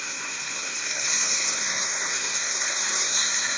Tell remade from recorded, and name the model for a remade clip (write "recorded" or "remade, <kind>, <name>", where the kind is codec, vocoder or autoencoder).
remade, codec, SNAC